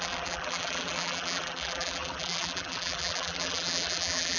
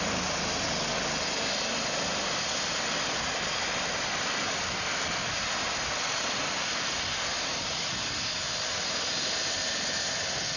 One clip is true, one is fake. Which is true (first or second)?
second